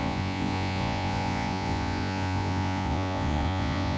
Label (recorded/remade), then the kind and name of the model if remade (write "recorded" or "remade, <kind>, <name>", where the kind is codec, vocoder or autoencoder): remade, vocoder, Vocos